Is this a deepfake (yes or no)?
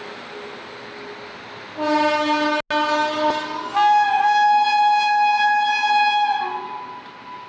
no